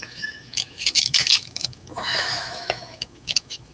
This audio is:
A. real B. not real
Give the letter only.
B